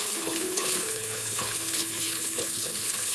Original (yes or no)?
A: no